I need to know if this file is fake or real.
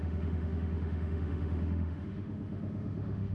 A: fake